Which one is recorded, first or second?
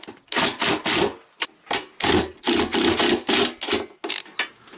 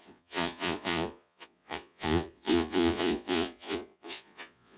first